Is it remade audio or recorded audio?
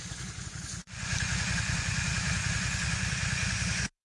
remade